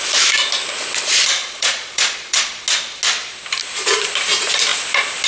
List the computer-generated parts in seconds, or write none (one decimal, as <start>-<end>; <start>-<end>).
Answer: 1.4-2.6